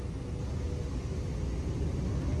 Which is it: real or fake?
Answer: real